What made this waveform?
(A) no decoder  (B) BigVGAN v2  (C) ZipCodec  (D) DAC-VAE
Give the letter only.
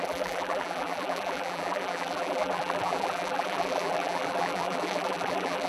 B